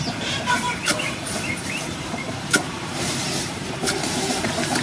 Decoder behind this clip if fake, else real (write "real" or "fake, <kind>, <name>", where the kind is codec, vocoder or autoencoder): fake, vocoder, BigVGAN v2